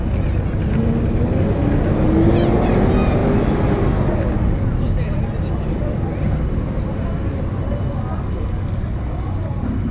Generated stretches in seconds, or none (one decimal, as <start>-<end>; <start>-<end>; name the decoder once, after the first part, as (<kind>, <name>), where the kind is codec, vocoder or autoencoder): none